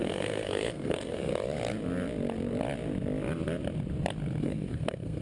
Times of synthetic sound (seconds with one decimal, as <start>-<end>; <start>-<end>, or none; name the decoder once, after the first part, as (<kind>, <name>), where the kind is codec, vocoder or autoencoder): 0.0-1.3 (codec, SNAC); 4.4-5.2

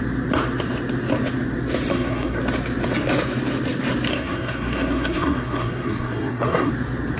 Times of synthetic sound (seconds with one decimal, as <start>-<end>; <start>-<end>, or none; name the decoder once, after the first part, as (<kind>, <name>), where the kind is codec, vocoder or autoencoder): 1.9-2.4 (codec, SNAC); 4.1-6.7